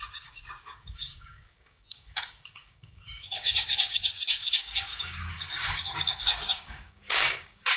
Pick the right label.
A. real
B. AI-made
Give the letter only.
B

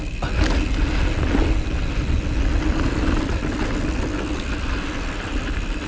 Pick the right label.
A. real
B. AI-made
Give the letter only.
A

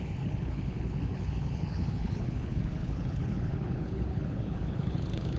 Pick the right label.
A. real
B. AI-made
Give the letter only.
B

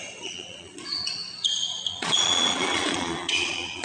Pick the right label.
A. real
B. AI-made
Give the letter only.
B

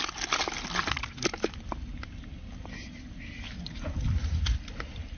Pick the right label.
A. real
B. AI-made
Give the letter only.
A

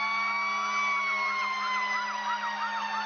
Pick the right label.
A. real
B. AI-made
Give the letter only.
A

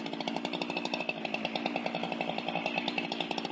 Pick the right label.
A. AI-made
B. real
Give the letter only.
B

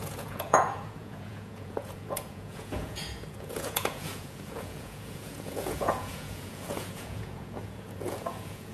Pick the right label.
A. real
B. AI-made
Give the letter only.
B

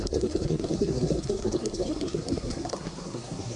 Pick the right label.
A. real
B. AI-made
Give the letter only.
B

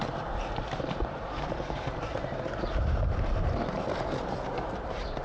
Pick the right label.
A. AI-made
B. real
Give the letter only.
A